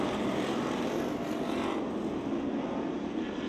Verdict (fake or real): fake